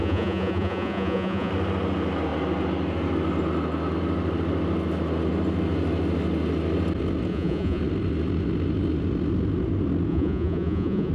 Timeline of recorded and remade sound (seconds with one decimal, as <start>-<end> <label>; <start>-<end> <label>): 0.0-1.5 remade; 1.5-7.3 recorded; 7.3-7.8 remade; 7.8-10.1 recorded; 10.1-11.1 remade